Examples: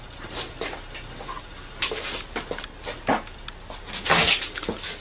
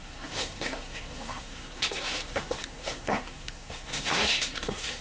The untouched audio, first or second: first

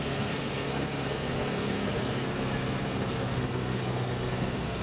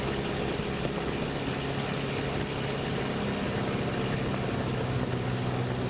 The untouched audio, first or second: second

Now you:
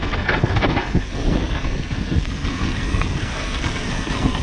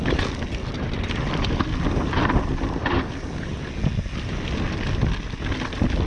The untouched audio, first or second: second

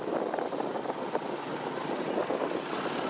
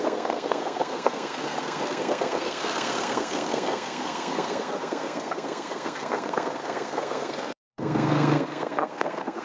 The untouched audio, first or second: first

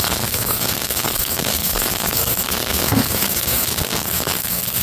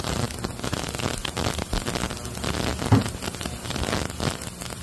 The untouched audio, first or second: second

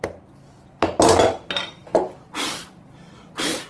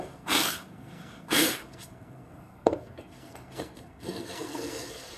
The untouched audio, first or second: first